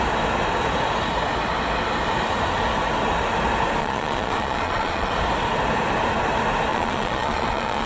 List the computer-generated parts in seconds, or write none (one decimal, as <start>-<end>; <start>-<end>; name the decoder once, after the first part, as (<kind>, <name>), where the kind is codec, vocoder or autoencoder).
3.8-5.1 (vocoder, Vocos); 6.7-7.9